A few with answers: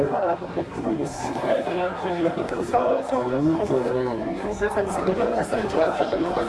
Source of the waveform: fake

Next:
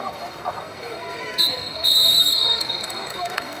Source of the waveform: fake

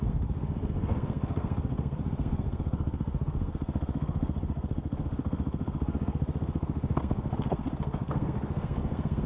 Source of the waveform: fake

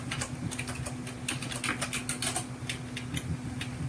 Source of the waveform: real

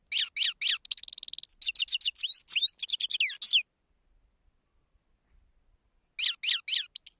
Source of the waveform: real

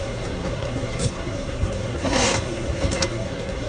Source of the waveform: fake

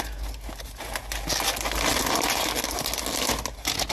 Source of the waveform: real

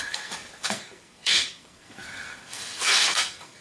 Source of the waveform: fake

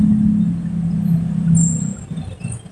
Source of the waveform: real